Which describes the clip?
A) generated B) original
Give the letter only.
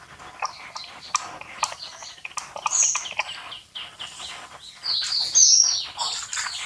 B